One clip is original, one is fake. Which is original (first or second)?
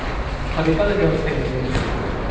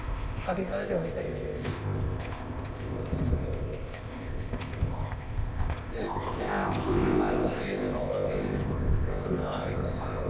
first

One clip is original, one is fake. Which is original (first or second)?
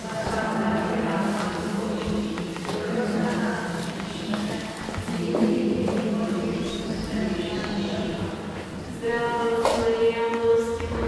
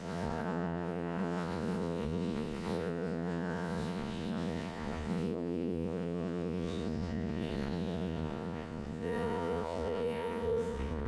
first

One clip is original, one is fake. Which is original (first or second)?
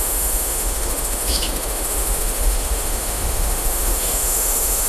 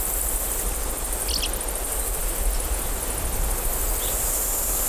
second